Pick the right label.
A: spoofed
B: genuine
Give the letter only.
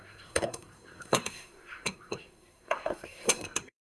A